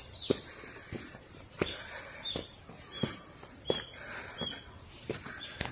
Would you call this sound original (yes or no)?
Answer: yes